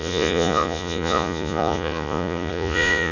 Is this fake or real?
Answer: fake